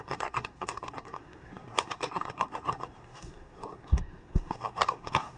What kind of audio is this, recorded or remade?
remade